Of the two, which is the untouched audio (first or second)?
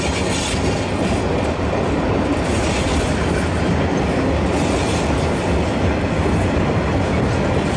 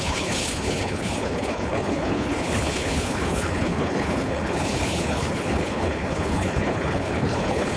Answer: first